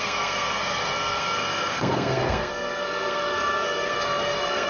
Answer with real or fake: fake